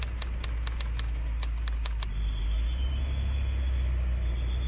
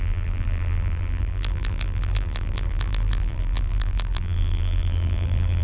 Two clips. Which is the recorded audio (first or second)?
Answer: first